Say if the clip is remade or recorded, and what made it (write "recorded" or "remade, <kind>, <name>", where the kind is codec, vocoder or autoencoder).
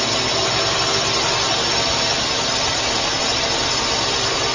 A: recorded